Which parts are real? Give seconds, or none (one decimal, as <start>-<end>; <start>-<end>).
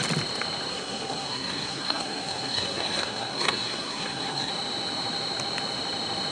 0.0-0.7; 4.5-6.3